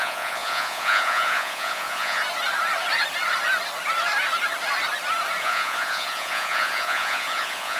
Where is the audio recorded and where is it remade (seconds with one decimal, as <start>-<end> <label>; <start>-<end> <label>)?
0.0-2.2 remade; 2.2-5.4 recorded; 5.4-7.8 remade